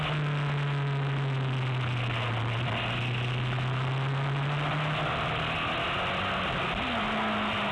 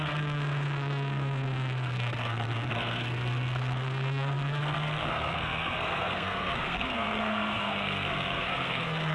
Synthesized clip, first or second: second